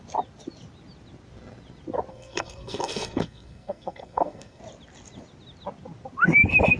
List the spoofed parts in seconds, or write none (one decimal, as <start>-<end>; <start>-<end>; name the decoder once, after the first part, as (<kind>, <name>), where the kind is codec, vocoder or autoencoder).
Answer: 2.1-4.6 (codec, SNAC)